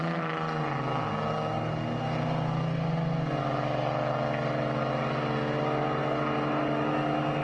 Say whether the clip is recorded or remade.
recorded